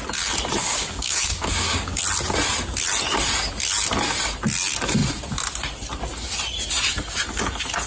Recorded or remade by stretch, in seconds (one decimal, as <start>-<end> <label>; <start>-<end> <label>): 0.0-0.6 recorded; 0.6-2.0 remade; 2.0-7.9 recorded